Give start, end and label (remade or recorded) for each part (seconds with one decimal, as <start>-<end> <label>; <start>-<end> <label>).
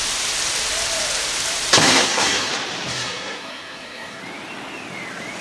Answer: 0.0-1.8 recorded; 1.8-2.5 remade; 2.5-2.9 recorded; 2.9-4.2 remade; 4.2-5.4 recorded